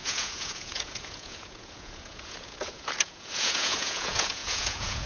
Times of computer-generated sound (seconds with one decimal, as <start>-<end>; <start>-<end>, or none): 0.0-5.1